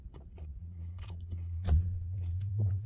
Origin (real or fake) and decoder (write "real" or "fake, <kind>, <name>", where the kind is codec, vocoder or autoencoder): fake, vocoder, Vocos